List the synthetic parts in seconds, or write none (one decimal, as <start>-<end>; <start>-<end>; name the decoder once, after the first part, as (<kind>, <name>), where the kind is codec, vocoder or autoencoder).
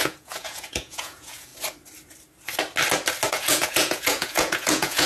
0.0-1.5 (vocoder, Vocos); 3.3-5.1